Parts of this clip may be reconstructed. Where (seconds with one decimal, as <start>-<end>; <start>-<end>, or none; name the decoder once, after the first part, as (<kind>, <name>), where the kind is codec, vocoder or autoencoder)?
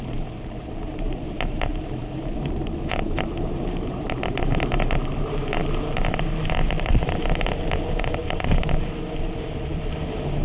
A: 0.0-10.4 (vocoder, BigVGAN v2)